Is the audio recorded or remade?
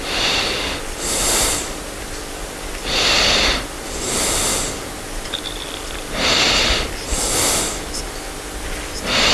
recorded